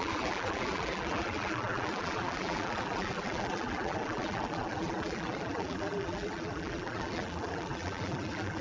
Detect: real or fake fake